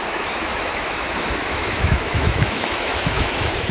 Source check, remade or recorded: remade